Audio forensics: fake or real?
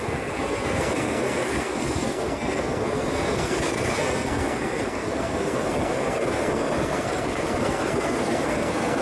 fake